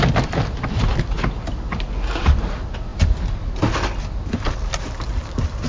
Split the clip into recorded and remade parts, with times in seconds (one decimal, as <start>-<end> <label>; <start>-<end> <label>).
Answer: 0.0-5.7 recorded